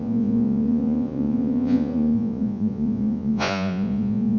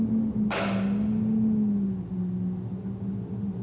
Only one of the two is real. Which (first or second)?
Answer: second